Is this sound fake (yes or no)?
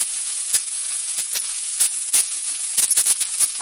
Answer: yes